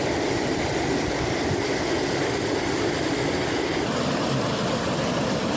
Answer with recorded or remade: recorded